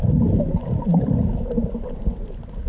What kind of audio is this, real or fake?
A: real